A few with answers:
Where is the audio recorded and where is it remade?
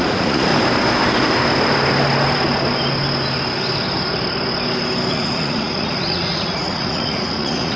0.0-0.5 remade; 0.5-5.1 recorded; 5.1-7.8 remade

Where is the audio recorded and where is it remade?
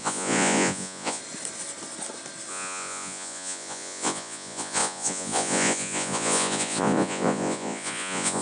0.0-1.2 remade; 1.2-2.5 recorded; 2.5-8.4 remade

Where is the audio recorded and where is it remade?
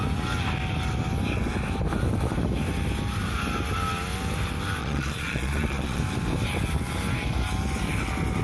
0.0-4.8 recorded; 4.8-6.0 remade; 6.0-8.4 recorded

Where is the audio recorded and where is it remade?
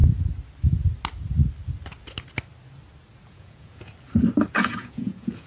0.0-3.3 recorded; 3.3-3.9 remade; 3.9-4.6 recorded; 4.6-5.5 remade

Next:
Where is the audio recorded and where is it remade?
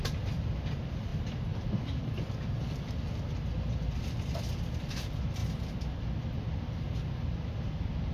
0.0-8.1 recorded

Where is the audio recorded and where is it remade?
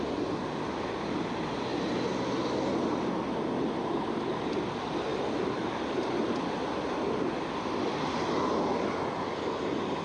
0.0-10.0 recorded